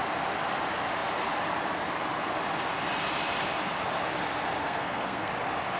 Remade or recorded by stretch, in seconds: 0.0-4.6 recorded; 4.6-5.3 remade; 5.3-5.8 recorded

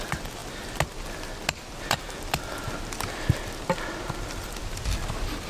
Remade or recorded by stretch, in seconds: 0.0-5.5 recorded

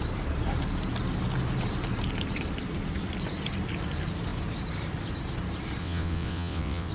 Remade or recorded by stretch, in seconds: 0.0-5.8 recorded; 5.8-6.9 remade

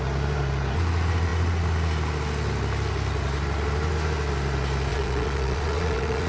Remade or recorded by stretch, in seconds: 0.0-4.9 recorded; 4.9-6.3 remade

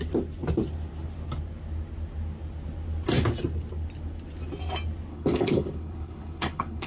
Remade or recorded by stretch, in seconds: 0.0-5.1 recorded; 5.1-6.9 remade

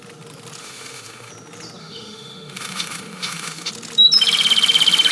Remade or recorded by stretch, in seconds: 0.0-0.6 recorded; 0.6-1.3 remade; 1.3-1.8 recorded; 1.8-3.7 remade; 3.7-5.1 recorded

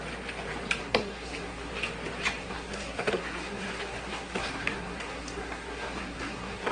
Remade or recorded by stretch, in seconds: 0.0-0.8 recorded; 0.8-1.7 remade; 1.7-2.4 recorded; 2.4-6.7 remade

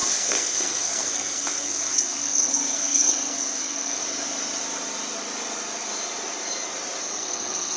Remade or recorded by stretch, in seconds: 0.0-4.0 remade; 4.0-7.0 recorded; 7.0-7.8 remade